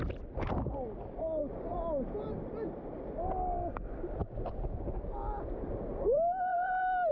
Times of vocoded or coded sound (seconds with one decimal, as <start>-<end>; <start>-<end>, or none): none